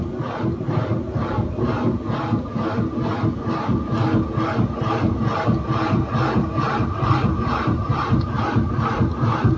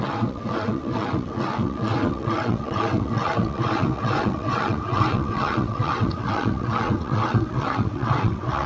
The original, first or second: first